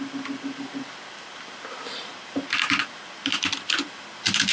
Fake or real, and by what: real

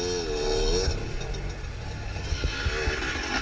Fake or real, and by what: real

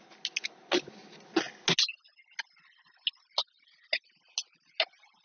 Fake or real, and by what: real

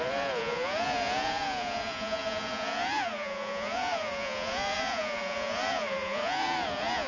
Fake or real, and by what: fake, vocoder, Vocos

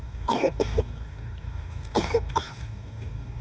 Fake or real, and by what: fake, codec, DAC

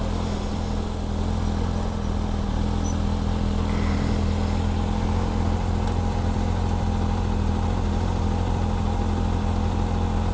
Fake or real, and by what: real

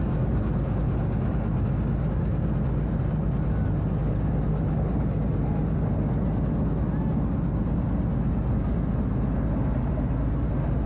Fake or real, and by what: real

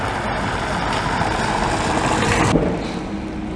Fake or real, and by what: real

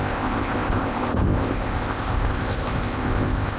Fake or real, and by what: fake, codec, ZipCodec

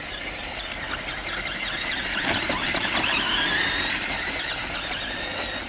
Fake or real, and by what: real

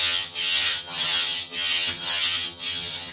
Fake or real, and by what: fake, vocoder, HiFi-GAN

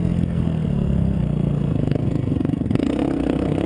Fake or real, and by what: fake, codec, SNAC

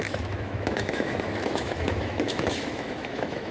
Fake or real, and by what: fake, autoencoder, DAC-VAE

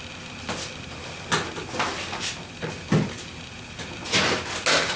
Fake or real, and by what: real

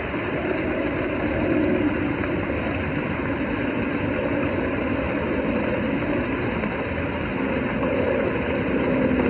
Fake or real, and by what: real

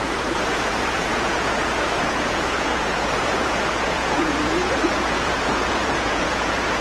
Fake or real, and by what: fake, vocoder, Vocos